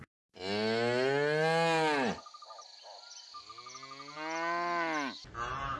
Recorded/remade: recorded